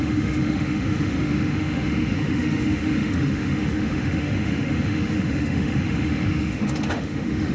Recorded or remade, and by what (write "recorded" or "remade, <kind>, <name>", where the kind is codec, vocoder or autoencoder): remade, autoencoder, DAC-VAE